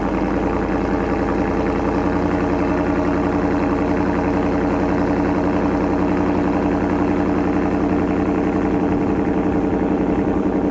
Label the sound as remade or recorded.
recorded